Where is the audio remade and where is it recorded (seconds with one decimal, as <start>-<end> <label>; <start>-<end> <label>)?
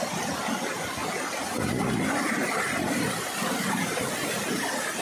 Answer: 0.0-5.0 recorded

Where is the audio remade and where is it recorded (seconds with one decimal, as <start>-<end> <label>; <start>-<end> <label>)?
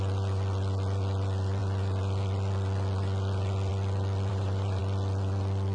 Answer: 0.0-4.3 recorded; 4.3-4.8 remade; 4.8-5.7 recorded